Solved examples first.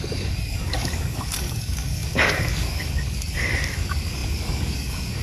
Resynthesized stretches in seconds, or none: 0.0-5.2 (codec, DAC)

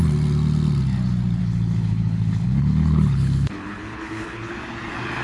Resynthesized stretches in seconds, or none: 1.4-4.5 (codec, HILCodec)